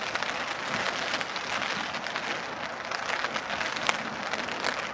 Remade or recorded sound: recorded